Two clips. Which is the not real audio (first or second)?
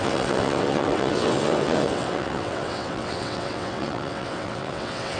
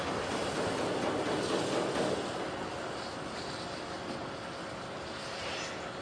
first